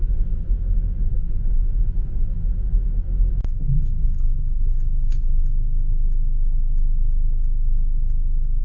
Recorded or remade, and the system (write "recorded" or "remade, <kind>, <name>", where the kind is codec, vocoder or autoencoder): remade, autoencoder, DAC-VAE